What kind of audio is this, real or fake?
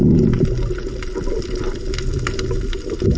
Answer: fake